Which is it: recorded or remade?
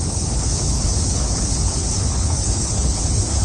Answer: remade